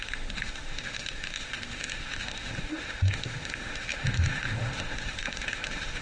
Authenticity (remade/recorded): remade